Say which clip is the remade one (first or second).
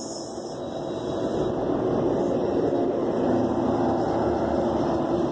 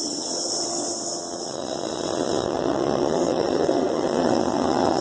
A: second